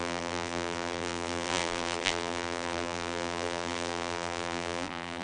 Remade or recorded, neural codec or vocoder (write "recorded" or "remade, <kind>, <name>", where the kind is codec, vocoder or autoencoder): remade, vocoder, BigVGAN v2